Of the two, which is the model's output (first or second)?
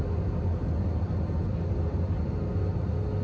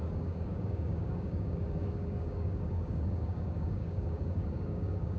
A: second